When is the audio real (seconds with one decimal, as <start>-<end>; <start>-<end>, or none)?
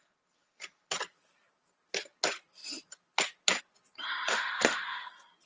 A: 0.0-4.3; 5.1-5.5